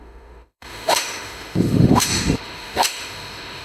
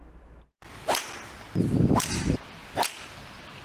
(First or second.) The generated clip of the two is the first